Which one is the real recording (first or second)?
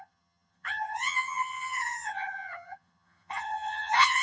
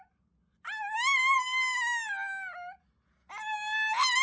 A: second